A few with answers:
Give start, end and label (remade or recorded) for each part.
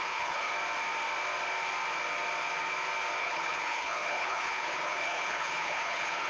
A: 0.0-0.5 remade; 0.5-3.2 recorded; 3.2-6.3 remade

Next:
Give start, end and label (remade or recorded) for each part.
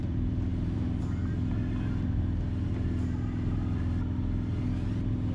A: 0.0-5.3 recorded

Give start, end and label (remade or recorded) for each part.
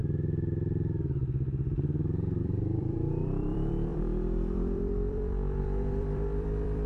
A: 0.0-2.4 recorded; 2.4-6.9 remade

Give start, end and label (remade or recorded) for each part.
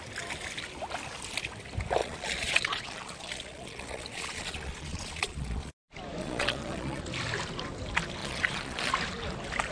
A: 0.0-2.0 recorded; 2.0-5.7 remade; 5.7-6.2 recorded; 6.2-7.0 remade; 7.0-8.2 recorded; 8.2-8.9 remade; 8.9-9.7 recorded